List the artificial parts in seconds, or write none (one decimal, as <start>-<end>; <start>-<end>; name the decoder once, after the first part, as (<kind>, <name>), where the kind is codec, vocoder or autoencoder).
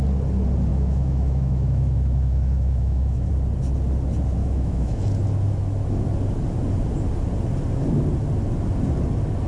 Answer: 0.7-3.3 (autoencoder, DAC-VAE); 4.4-5.0